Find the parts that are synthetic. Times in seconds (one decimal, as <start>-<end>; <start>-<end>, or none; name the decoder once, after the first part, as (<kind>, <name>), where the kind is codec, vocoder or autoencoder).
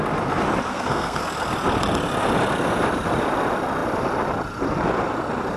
0.7-1.2 (codec, SNAC)